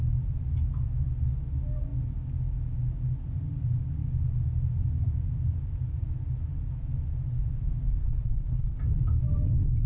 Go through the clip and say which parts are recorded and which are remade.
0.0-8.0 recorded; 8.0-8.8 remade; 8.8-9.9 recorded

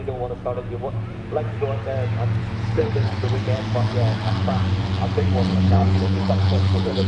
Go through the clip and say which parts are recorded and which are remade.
0.0-2.4 recorded; 2.4-3.4 remade; 3.4-5.5 recorded; 5.5-7.1 remade

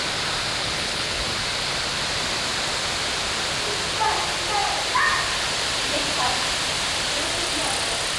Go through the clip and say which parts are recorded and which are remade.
0.0-0.6 recorded; 0.6-1.2 remade; 1.2-8.2 recorded

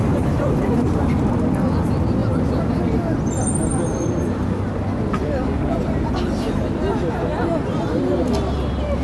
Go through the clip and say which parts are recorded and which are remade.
0.0-9.0 recorded

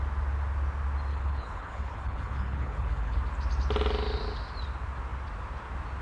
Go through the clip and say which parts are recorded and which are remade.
0.0-1.1 recorded; 1.1-3.2 remade; 3.2-6.0 recorded

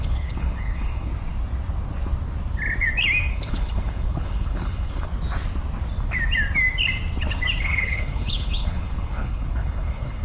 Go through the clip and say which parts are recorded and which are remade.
0.0-1.1 remade; 1.1-3.3 recorded; 3.3-5.1 remade; 5.1-7.6 recorded; 7.6-10.2 remade

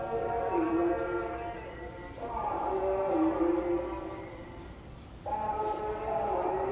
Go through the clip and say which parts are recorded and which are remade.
0.0-6.7 recorded